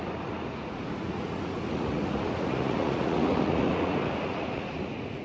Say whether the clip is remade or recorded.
remade